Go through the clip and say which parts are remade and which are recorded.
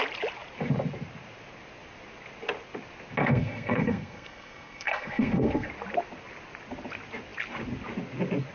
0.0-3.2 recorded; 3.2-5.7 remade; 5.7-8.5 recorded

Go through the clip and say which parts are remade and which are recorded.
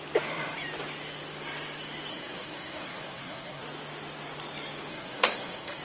0.0-2.1 recorded; 2.1-3.6 remade; 3.6-4.9 recorded; 4.9-5.8 remade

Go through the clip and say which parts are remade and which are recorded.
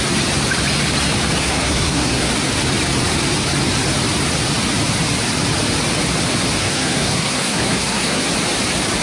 0.0-1.4 recorded; 1.4-2.3 remade; 2.3-6.6 recorded; 6.6-8.2 remade; 8.2-9.0 recorded